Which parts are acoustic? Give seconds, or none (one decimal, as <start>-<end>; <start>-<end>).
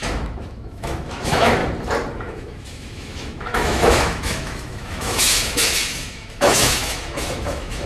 1.6-2.1